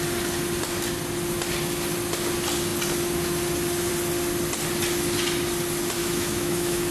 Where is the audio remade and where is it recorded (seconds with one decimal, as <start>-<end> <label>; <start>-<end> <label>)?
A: 0.0-6.0 recorded; 6.0-6.9 remade